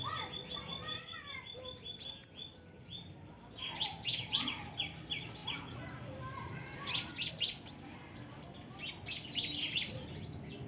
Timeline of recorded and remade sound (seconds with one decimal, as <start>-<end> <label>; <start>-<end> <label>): 0.0-10.7 recorded